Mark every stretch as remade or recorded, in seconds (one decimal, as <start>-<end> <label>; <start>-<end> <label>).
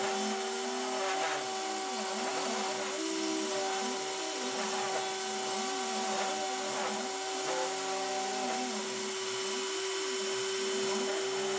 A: 0.0-11.6 recorded